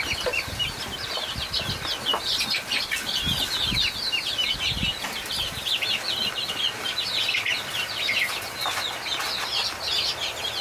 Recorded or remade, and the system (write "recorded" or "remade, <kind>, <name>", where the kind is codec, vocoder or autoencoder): recorded